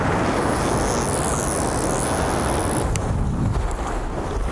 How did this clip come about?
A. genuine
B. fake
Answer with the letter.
A